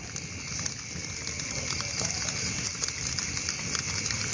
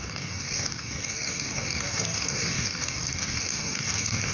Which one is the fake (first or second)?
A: second